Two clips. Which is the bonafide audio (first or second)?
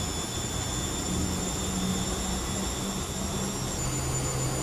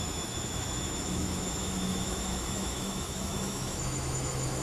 first